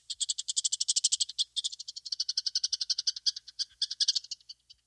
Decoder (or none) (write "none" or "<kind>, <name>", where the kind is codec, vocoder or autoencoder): none